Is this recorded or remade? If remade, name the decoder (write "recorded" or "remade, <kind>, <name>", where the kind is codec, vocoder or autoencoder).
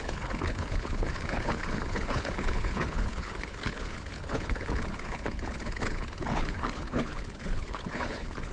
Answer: remade, codec, HILCodec